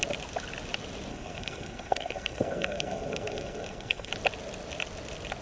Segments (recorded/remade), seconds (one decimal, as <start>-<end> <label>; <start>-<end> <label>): 0.0-1.1 recorded; 1.1-4.1 remade; 4.1-5.4 recorded